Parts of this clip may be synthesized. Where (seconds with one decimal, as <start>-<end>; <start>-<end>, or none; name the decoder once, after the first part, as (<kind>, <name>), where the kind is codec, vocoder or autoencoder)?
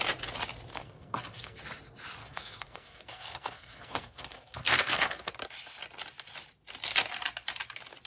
0.7-1.6 (codec, SNAC); 2.2-5.3